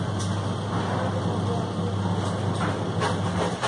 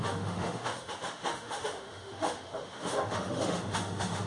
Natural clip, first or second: first